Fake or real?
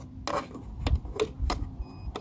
real